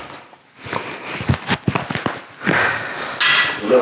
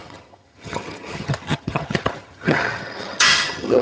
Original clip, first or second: first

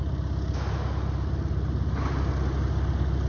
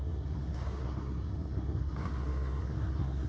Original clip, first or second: first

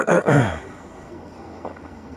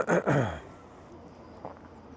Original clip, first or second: second